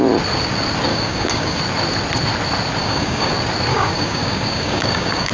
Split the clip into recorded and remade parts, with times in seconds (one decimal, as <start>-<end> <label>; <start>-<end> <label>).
0.0-0.9 recorded; 0.9-1.6 remade; 1.6-2.8 recorded; 2.8-3.3 remade; 3.3-3.7 recorded; 3.7-5.3 remade